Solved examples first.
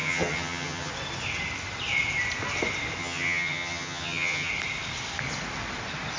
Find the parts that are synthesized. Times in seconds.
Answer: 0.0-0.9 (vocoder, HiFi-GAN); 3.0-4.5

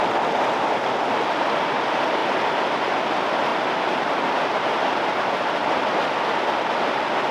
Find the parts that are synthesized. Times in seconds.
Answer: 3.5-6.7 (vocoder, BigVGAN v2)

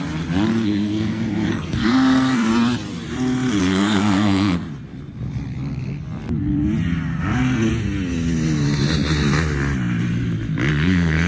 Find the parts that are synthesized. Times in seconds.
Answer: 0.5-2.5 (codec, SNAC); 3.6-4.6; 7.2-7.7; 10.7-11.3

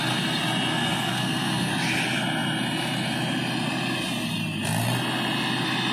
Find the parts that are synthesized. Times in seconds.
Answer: 0.7-1.7 (codec, SNAC)

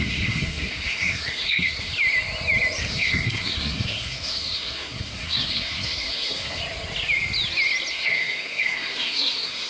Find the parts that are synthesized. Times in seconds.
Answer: 0.0-1.9 (codec, SNAC); 2.8-6.6; 7.9-9.7

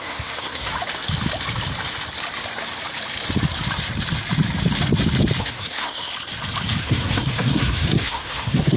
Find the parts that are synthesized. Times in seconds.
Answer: 0.0-0.7 (codec, SNAC); 5.4-6.1; 6.8-8.8

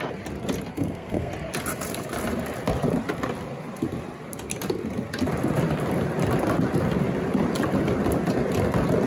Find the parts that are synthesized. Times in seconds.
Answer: 0.7-1.3 (codec, SNAC)